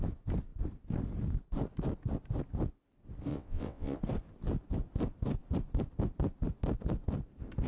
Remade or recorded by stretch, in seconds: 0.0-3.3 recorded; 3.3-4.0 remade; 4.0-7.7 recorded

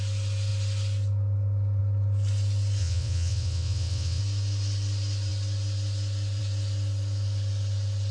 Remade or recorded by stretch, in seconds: 0.0-2.8 recorded; 2.8-4.2 remade; 4.2-8.1 recorded

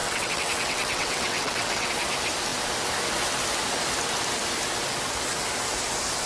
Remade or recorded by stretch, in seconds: 0.0-1.9 remade; 1.9-6.3 recorded

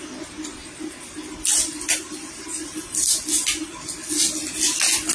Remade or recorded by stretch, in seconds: 0.0-5.1 recorded

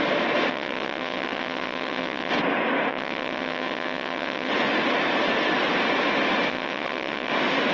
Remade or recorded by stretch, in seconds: 0.0-0.5 recorded; 0.5-2.3 remade; 2.3-2.9 recorded; 2.9-4.5 remade; 4.5-6.5 recorded; 6.5-7.3 remade; 7.3-7.7 recorded

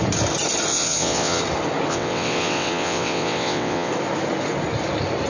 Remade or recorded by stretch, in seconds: 0.0-0.7 recorded; 0.7-1.4 remade; 1.4-1.9 recorded; 1.9-3.9 remade; 3.9-5.3 recorded

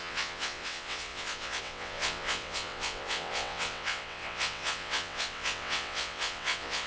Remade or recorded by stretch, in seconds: 0.0-6.9 remade

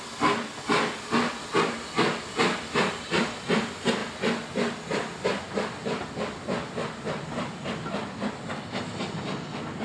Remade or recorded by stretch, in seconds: 0.0-9.8 recorded